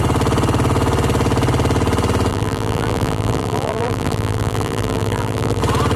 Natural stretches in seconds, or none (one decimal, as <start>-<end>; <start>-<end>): 0.0-2.3; 5.6-6.0